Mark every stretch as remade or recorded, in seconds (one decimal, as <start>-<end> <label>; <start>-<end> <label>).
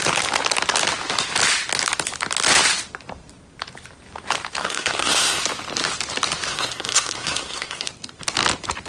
0.0-4.6 recorded; 4.6-5.4 remade; 5.4-6.5 recorded; 6.5-7.9 remade; 7.9-8.9 recorded